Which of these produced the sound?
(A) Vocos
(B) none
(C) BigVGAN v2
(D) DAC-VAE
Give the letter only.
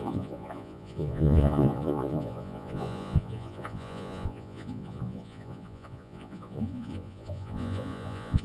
A